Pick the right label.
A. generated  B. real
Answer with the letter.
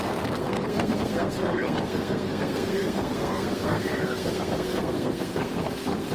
A